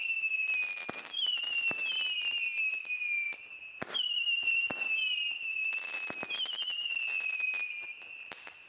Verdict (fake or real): real